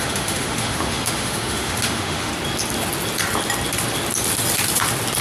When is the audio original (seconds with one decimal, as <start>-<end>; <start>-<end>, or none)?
2.3-5.2